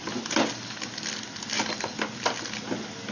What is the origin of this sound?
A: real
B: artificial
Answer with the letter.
A